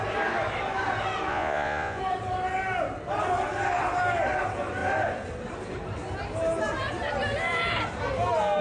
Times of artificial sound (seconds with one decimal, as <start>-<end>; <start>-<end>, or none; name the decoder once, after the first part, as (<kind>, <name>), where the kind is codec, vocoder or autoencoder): 1.3-2.0 (vocoder, Vocos)